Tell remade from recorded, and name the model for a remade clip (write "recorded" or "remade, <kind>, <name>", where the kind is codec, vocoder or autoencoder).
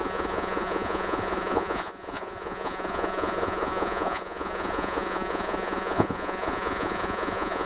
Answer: remade, vocoder, Vocos